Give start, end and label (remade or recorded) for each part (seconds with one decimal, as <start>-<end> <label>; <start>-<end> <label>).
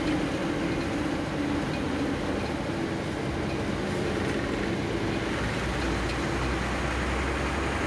0.0-7.9 recorded